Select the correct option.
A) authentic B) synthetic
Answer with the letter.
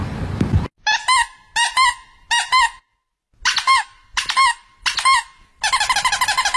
A